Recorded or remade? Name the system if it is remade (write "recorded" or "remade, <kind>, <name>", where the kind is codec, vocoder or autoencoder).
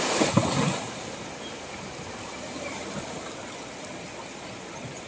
recorded